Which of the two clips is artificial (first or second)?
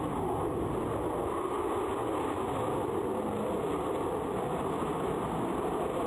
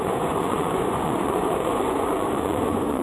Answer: second